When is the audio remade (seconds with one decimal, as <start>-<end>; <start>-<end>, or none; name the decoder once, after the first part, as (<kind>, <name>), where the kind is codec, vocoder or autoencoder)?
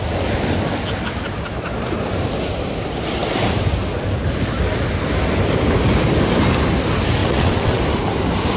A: 7.2-7.8 (vocoder, WaveNeXt)